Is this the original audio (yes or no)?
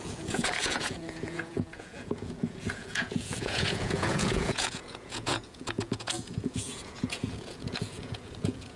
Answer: no